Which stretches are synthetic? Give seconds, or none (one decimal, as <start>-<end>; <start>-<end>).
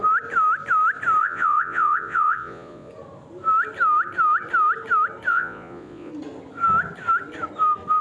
1.2-2.9; 5.3-6.1